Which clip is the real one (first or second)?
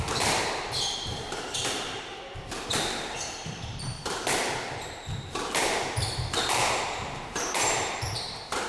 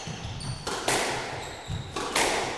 second